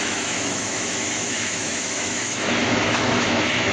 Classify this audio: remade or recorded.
remade